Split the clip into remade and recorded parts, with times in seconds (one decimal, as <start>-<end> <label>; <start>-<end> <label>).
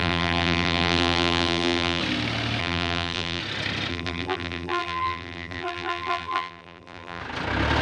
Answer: 0.0-2.0 remade; 2.0-2.6 recorded; 2.6-3.4 remade; 3.4-3.9 recorded; 3.9-7.2 remade; 7.2-7.8 recorded